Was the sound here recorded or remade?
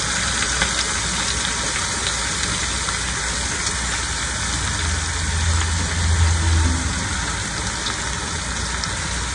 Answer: recorded